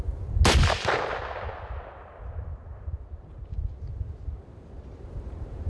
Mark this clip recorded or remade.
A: recorded